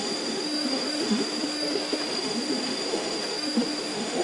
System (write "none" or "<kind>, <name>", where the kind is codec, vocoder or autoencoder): autoencoder, DAC-VAE